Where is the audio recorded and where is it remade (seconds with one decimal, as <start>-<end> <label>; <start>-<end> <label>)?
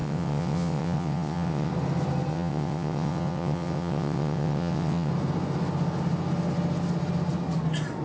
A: 0.0-1.7 remade; 1.7-2.3 recorded; 2.3-5.1 remade; 5.1-8.0 recorded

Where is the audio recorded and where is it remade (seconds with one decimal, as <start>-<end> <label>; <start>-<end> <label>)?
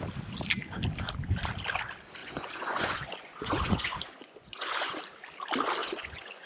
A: 0.0-2.2 recorded; 2.2-5.0 remade; 5.0-5.8 recorded; 5.8-6.5 remade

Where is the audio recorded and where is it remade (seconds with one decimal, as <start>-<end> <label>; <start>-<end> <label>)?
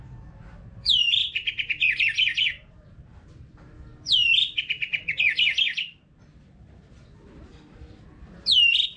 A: 0.0-9.0 recorded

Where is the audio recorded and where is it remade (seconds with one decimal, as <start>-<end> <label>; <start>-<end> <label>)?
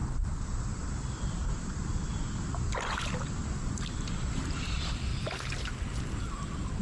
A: 0.0-5.1 remade; 5.1-5.9 recorded; 5.9-6.8 remade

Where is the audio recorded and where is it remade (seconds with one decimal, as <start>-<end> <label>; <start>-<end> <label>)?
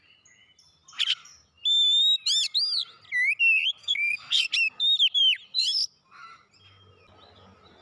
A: 0.0-3.8 recorded; 3.8-4.5 remade; 4.5-7.8 recorded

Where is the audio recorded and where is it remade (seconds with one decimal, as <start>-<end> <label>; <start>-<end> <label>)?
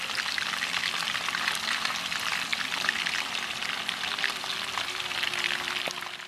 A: 0.0-6.3 recorded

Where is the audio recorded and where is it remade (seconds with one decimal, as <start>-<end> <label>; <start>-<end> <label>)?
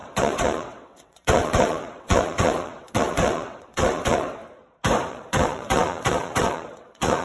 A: 0.0-4.4 remade; 4.4-5.1 recorded; 5.1-7.2 remade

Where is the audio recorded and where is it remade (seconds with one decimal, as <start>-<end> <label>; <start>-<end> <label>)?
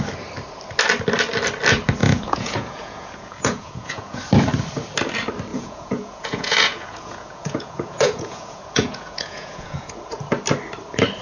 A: 0.0-2.0 recorded; 2.0-4.2 remade; 4.2-5.5 recorded; 5.5-9.9 remade; 9.9-11.2 recorded